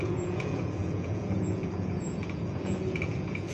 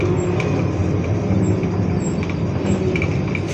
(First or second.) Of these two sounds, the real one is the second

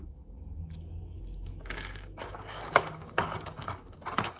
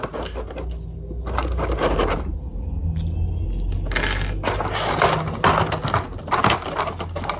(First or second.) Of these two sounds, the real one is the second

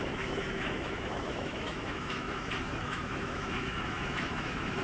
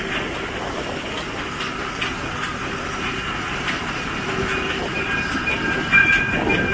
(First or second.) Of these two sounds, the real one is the second